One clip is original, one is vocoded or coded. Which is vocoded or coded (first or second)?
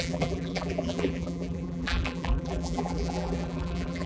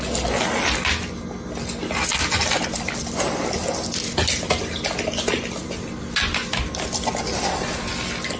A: first